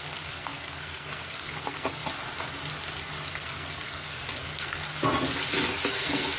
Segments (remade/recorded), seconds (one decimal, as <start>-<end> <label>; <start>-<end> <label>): 0.0-2.0 remade; 2.0-3.3 recorded; 3.3-4.8 remade; 4.8-5.9 recorded; 5.9-6.4 remade